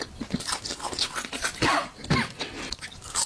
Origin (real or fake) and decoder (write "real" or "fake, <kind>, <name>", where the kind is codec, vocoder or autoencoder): real